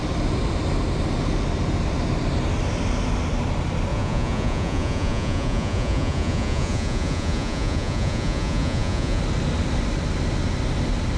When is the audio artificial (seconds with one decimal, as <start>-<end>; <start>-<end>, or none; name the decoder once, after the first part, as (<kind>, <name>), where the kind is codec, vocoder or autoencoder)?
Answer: 3.9-9.2 (vocoder, Vocos)